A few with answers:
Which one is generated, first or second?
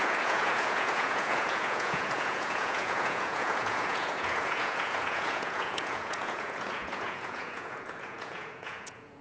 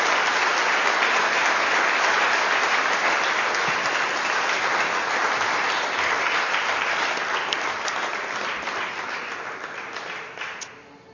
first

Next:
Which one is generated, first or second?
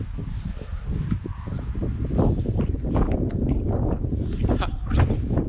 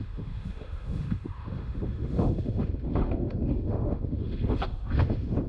second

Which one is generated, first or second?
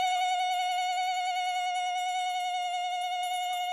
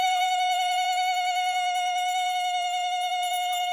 second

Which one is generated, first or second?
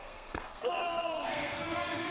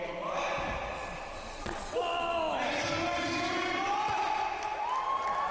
first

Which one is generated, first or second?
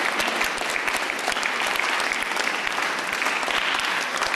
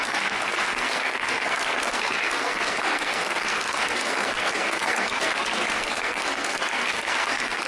second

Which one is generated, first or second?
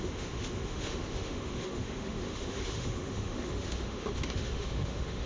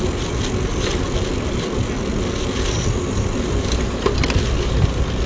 first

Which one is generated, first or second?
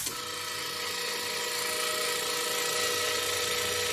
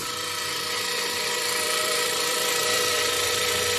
second